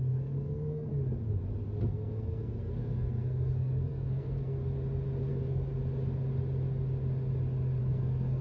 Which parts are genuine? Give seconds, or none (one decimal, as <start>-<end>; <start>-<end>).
0.9-1.8; 4.6-5.3; 5.7-7.8